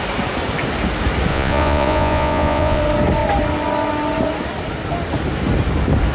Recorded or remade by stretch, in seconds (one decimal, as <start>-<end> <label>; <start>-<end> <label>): 0.0-1.3 recorded; 1.3-2.8 remade; 2.8-6.1 recorded